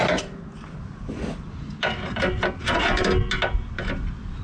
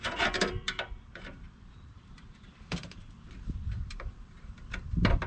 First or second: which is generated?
second